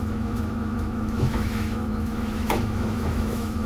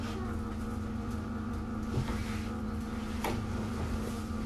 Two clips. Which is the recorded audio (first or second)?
second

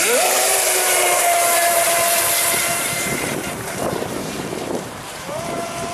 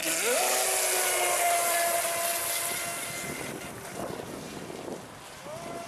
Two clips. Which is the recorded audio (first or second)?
second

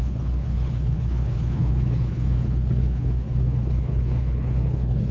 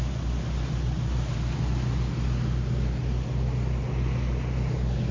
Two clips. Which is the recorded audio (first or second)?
second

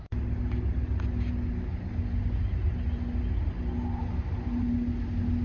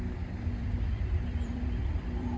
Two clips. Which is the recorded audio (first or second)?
first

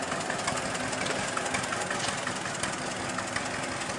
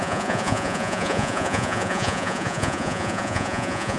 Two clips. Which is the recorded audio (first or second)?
first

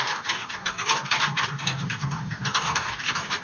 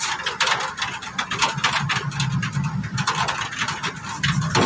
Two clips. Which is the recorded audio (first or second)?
second